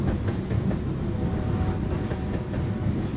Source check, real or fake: real